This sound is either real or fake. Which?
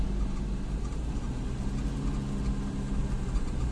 real